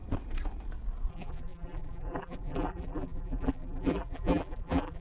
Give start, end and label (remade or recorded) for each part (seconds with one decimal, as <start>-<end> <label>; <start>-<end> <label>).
0.0-1.1 recorded; 1.1-5.0 remade